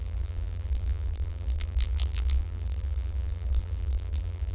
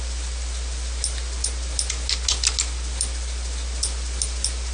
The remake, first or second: first